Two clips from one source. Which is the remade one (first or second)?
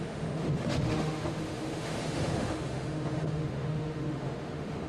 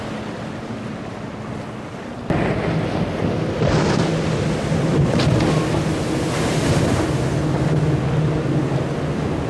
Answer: first